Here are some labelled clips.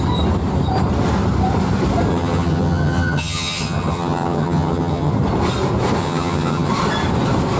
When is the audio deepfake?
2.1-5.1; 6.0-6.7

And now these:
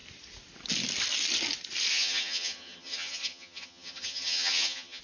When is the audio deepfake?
1.9-5.0

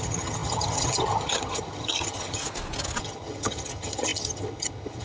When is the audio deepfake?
0.0-2.4; 3.0-5.0

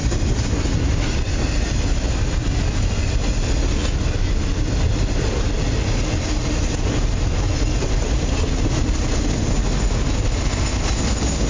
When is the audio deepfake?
none

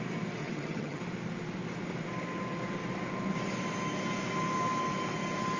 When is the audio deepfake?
0.4-1.0

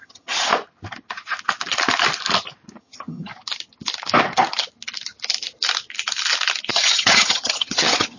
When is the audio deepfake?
0.0-0.5; 2.8-3.3; 6.7-8.2

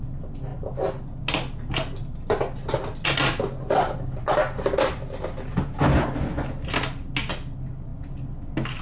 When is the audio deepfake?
none

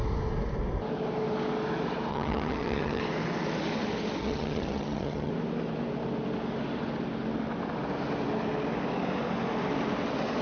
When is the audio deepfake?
2.1-3.0; 4.2-5.3